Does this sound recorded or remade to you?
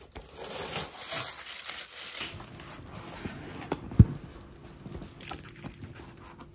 recorded